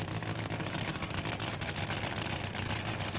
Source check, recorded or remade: recorded